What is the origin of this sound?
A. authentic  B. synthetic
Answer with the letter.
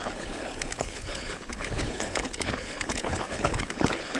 B